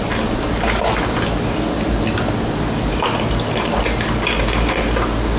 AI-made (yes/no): no